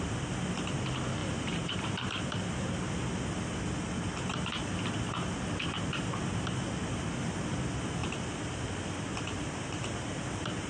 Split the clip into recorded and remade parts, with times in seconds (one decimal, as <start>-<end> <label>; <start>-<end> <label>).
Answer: 0.0-1.2 recorded; 1.2-3.0 remade; 3.0-8.0 recorded; 8.0-9.9 remade; 9.9-10.7 recorded